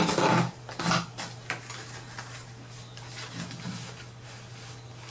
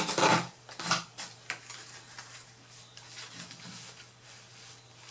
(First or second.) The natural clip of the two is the first